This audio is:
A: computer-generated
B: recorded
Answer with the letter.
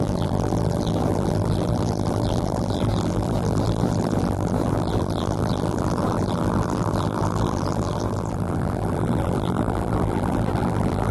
A